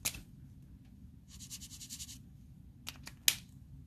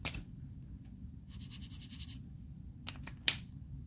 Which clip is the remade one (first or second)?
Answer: second